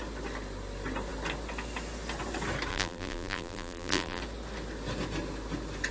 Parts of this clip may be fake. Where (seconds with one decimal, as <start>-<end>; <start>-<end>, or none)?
2.7-4.2